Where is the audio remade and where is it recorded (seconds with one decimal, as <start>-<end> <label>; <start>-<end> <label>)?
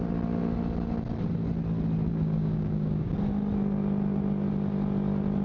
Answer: 0.0-2.1 recorded; 2.1-3.1 remade; 3.1-5.4 recorded